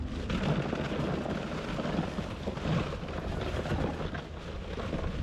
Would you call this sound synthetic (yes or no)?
no